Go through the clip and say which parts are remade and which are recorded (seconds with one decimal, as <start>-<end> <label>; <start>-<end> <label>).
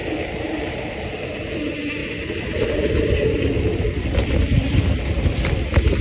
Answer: 0.0-1.0 remade; 1.0-2.0 recorded; 2.0-3.5 remade; 3.5-6.0 recorded